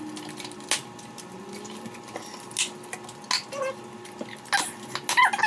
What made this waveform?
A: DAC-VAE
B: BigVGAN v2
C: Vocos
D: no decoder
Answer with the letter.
D